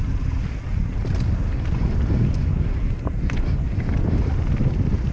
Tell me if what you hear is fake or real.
real